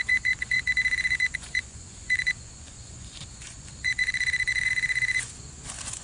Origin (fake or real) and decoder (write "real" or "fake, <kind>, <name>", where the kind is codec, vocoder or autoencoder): fake, vocoder, Vocos